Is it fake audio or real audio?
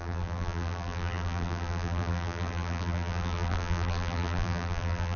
fake